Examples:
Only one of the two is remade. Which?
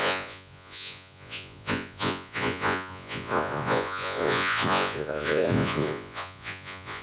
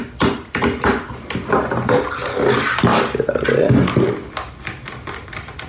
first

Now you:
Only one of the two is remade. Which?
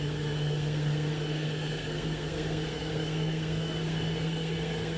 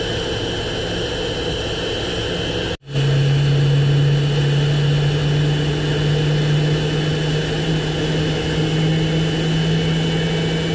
first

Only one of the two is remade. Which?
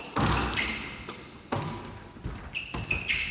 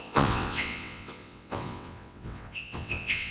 second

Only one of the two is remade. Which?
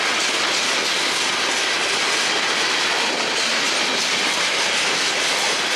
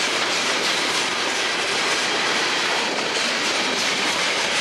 second